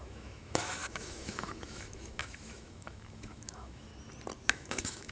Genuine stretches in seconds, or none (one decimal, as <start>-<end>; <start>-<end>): 3.9-4.5

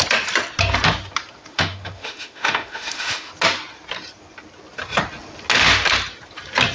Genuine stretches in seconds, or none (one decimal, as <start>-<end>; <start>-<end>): 0.0-1.5; 3.3-6.7

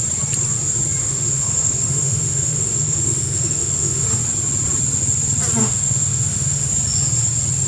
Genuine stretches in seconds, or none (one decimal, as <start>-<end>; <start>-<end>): 0.0-1.0; 4.2-5.6; 6.7-7.7